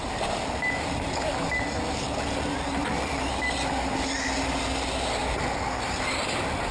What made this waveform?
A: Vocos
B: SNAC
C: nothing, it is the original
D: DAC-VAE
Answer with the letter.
C